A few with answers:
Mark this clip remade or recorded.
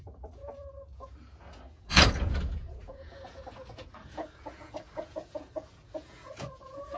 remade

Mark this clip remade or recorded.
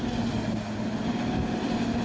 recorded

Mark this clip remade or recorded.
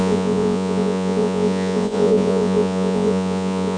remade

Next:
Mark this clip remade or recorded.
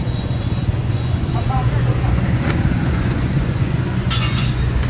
remade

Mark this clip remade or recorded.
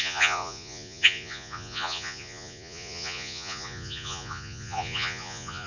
remade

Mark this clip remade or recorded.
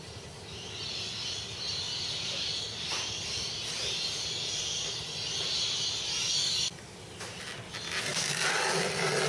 recorded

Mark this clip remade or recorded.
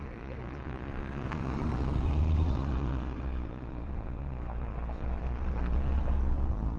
remade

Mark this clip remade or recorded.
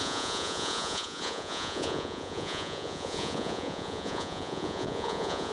remade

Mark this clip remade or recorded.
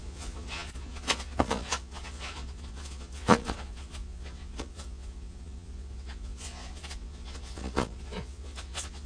remade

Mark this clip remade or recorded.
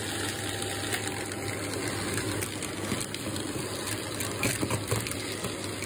recorded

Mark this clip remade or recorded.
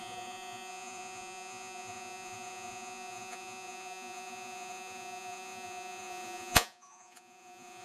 remade